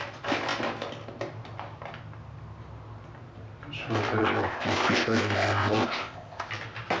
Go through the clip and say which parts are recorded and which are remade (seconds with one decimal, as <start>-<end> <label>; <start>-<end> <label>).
0.0-4.2 recorded; 4.2-6.5 remade; 6.5-7.0 recorded